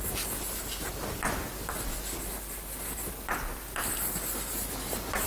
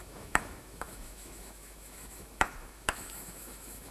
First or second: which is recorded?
first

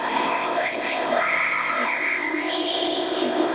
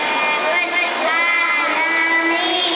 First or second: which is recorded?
second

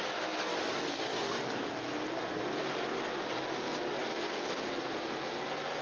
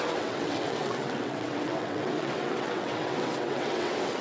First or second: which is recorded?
first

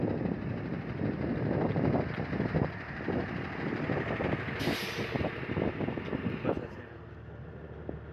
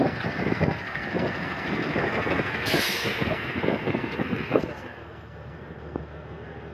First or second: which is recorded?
first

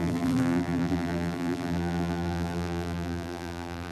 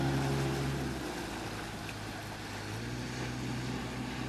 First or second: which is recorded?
second